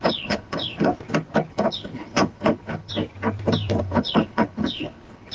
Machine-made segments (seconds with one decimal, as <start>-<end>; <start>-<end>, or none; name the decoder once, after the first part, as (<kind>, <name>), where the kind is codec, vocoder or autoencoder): 0.0-0.9 (codec, HILCodec); 1.5-2.9; 3.8-5.3